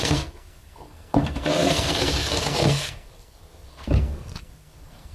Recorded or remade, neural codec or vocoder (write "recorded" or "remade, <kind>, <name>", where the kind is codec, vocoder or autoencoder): remade, codec, SNAC